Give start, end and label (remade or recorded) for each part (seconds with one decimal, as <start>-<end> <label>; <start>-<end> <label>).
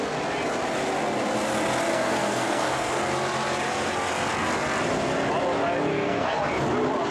0.0-1.9 recorded; 1.9-2.9 remade; 2.9-5.9 recorded; 5.9-6.4 remade; 6.4-7.1 recorded